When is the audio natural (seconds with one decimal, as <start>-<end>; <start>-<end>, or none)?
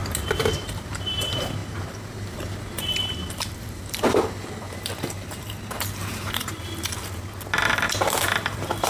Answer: 0.0-0.7; 7.0-7.7